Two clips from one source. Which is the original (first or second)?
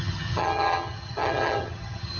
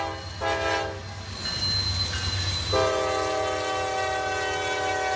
second